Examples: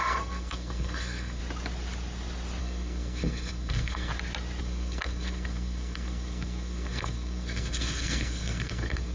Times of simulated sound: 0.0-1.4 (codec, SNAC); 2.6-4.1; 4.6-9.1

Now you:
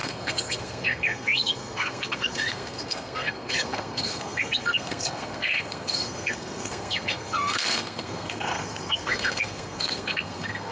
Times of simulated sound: 0.0-10.7 (codec, SNAC)

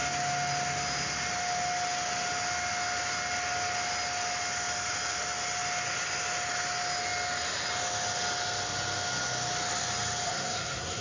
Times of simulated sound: 10.3-11.0 (codec, SNAC)

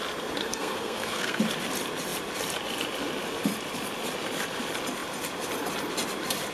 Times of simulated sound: 0.4-1.4 (codec, SNAC)